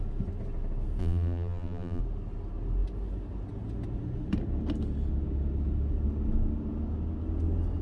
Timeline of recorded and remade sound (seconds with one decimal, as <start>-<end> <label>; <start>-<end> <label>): 0.0-1.0 recorded; 1.0-2.0 remade; 2.0-7.8 recorded